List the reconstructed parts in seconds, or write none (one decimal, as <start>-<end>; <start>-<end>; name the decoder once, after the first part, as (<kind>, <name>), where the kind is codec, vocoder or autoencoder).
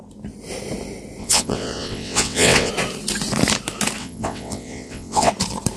1.2-2.7 (vocoder, WaveNeXt); 4.0-5.3